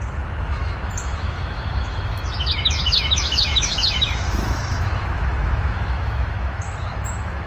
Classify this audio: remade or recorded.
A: remade